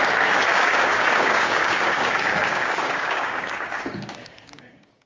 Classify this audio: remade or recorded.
remade